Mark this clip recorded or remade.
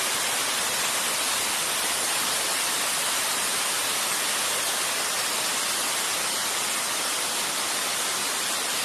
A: recorded